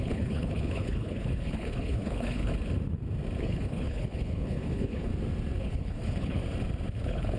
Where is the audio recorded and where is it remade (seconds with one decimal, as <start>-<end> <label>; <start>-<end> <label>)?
0.0-2.5 remade; 2.5-3.4 recorded; 3.4-5.1 remade; 5.1-5.6 recorded; 5.6-6.4 remade; 6.4-6.9 recorded; 6.9-7.4 remade